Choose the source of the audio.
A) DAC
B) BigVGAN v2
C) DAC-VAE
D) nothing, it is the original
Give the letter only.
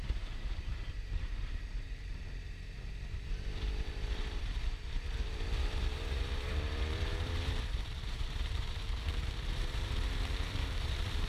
B